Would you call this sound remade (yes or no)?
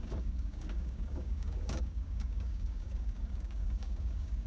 yes